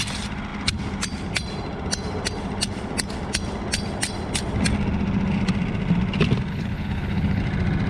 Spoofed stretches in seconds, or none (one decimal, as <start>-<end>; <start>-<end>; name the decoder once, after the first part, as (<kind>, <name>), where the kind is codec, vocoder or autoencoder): 6.5-7.4 (codec, HILCodec)